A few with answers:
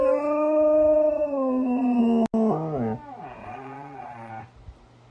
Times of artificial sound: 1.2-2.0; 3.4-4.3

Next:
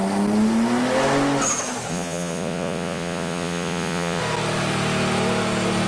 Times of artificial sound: 1.9-4.2

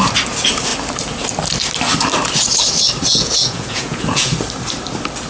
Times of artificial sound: 3.1-4.3

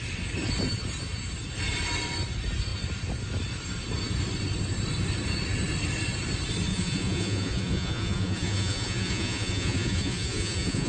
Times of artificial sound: 6.7-10.9